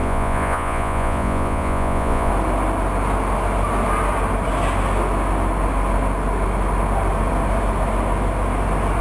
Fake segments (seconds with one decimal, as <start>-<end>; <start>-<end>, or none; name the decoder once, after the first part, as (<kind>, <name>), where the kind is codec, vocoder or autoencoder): 0.0-2.3 (vocoder, Vocos)